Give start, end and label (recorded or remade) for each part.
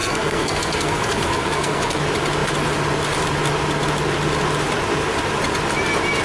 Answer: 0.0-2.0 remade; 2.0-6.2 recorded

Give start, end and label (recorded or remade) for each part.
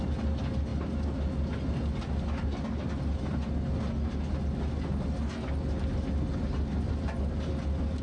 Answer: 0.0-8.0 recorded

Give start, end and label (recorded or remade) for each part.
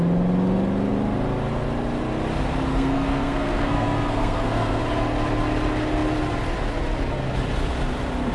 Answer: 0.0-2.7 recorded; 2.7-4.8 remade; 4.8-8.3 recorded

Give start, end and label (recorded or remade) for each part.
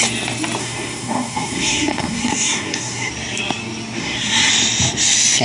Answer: 0.0-0.6 recorded; 0.6-3.1 remade; 3.1-4.0 recorded; 4.0-4.5 remade; 4.5-5.4 recorded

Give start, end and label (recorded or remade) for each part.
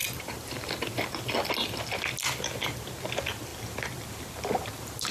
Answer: 0.0-5.1 recorded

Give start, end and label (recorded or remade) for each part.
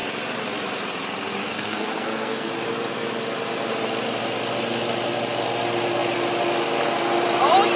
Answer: 0.0-1.4 recorded; 1.4-2.5 remade; 2.5-7.8 recorded